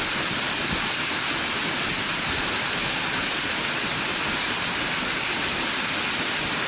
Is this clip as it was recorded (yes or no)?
yes